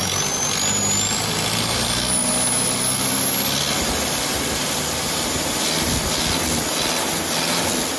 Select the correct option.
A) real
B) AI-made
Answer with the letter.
A